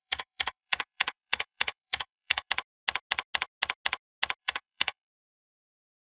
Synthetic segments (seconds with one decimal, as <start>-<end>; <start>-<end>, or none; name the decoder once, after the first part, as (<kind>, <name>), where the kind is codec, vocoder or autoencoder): 0.0-2.5 (codec, SNAC); 4.4-6.1